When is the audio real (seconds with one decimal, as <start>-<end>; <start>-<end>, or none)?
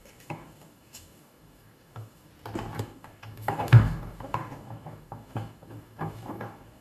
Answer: 2.3-2.8